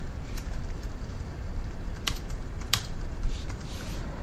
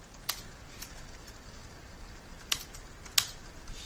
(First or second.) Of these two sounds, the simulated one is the first